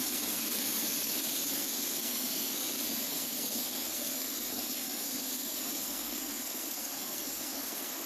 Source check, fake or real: fake